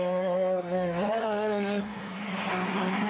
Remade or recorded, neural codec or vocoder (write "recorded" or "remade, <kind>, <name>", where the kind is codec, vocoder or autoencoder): remade, codec, SNAC